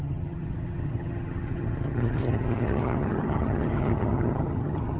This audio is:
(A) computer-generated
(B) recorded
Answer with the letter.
A